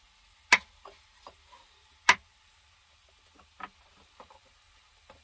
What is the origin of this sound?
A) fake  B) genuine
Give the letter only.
B